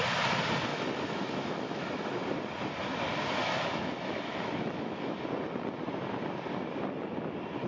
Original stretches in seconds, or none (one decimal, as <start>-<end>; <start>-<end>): 0.0-0.7; 2.2-3.4; 5.2-7.7